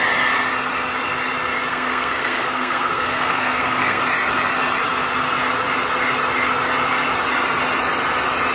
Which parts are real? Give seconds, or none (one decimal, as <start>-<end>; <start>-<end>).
0.0-1.7; 4.0-8.5

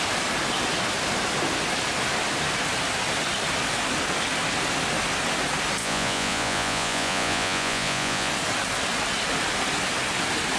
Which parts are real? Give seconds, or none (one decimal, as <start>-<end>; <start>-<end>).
0.0-5.8; 8.3-10.6

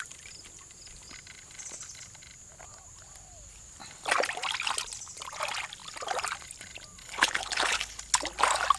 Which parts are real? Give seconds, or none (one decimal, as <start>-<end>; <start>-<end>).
0.0-7.0; 8.0-8.8

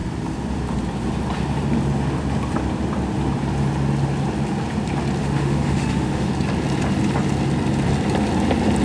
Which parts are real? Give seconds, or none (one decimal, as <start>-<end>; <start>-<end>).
0.0-5.2; 6.3-8.8

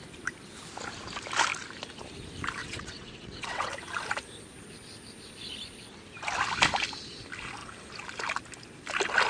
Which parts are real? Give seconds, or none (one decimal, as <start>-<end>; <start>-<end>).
0.0-2.6; 3.7-9.3

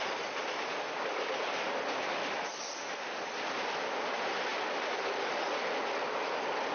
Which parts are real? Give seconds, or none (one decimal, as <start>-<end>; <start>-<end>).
0.0-6.7

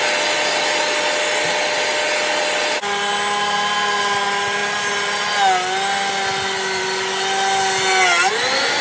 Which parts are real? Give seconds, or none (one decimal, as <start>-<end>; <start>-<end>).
0.0-8.8

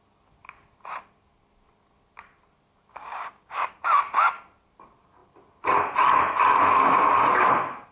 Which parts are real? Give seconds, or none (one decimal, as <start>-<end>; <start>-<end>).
0.0-2.9; 3.7-7.9